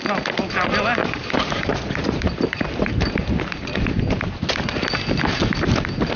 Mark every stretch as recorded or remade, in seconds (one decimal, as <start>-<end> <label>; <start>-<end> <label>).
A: 0.0-1.0 recorded; 1.0-4.7 remade; 4.7-6.2 recorded

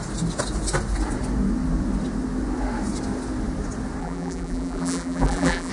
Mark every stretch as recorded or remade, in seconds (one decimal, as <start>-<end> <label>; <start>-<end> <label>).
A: 0.0-4.0 recorded; 4.0-5.7 remade

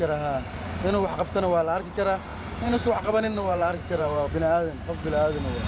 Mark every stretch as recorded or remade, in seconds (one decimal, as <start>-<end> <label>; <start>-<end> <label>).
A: 0.0-2.3 recorded; 2.3-4.3 remade; 4.3-5.7 recorded

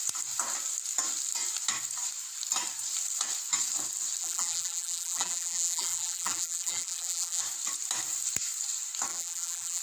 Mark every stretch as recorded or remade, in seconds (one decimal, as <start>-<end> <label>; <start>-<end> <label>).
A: 0.0-4.2 recorded; 4.2-7.4 remade; 7.4-9.1 recorded; 9.1-9.8 remade